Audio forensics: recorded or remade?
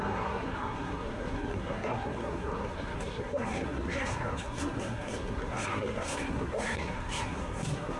remade